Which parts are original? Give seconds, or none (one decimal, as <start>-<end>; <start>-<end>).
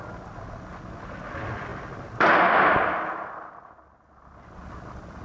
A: 0.0-5.2